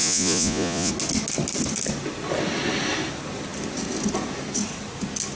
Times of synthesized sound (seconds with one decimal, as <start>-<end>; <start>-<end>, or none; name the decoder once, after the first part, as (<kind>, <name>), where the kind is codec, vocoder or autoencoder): 0.0-0.9 (vocoder, Vocos)